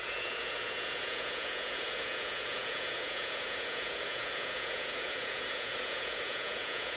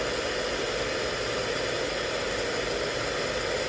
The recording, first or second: second